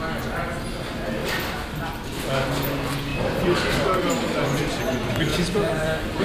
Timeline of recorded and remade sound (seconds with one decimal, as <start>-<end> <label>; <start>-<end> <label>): 0.0-1.2 recorded; 1.2-2.2 remade; 2.2-3.1 recorded; 3.1-4.8 remade; 4.8-5.3 recorded; 5.3-6.2 remade